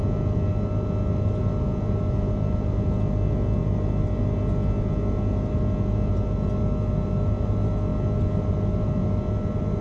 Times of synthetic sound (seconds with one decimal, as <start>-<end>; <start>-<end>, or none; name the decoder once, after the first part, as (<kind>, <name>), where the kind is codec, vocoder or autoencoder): none